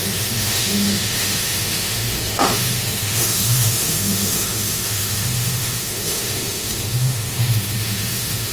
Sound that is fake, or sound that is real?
fake